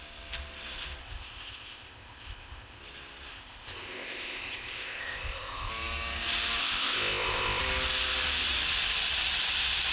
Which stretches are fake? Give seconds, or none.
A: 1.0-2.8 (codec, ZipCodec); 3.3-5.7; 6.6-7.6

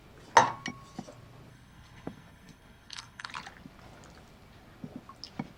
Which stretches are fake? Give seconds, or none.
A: 1.5-3.3 (codec, SNAC)

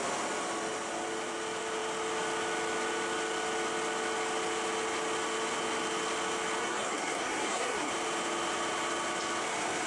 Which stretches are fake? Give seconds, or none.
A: 6.6-7.9 (codec, SNAC)

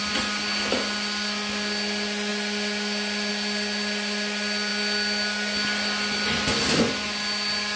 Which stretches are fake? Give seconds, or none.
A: none

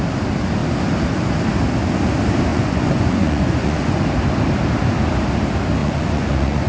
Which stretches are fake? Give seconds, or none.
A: 2.5-4.0 (vocoder, Vocos); 5.8-6.7

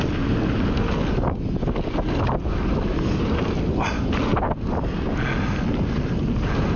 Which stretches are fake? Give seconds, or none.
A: none

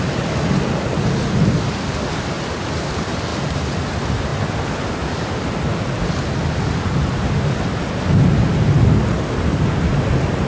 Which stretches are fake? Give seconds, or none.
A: none

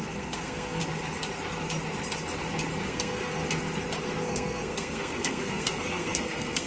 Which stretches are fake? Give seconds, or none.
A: 0.0-0.8 (codec, SNAC); 2.9-3.4; 4.0-6.7